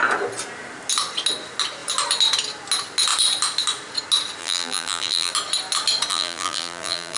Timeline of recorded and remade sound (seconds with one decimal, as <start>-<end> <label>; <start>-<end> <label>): 0.0-4.4 recorded; 4.4-5.3 remade; 5.3-6.1 recorded; 6.1-7.2 remade